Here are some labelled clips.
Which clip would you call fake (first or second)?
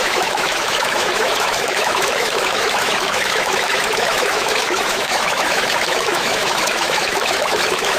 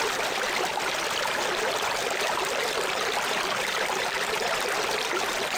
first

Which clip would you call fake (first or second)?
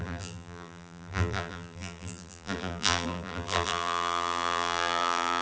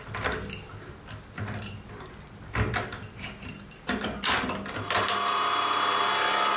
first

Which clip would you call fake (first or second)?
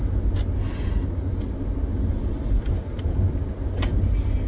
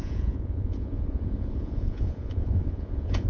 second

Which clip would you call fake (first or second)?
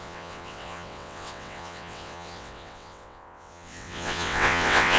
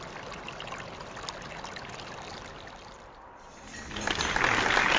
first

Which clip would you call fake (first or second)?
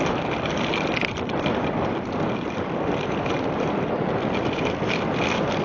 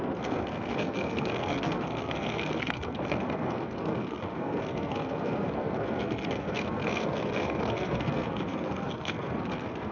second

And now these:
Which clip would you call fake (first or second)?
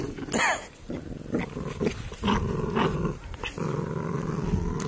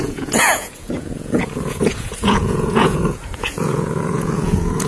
second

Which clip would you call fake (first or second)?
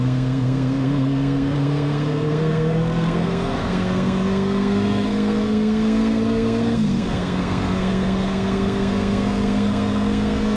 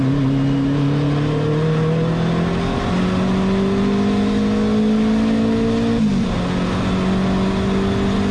first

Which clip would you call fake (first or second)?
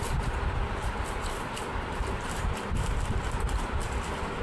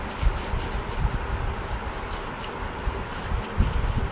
first